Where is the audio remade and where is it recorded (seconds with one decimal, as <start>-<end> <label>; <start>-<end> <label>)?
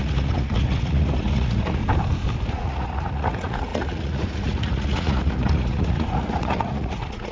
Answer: 0.0-1.8 remade; 1.8-2.5 recorded; 2.5-7.3 remade